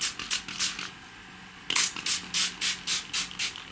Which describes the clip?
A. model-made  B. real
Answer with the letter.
B